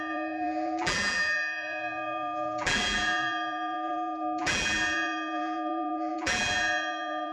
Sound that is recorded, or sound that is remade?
remade